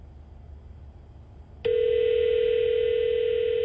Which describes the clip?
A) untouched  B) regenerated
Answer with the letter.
A